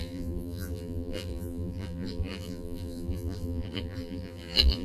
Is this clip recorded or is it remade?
remade